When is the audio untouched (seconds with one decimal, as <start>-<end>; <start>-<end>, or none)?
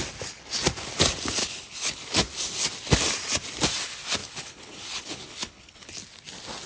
0.0-1.4; 2.0-4.2; 5.9-6.7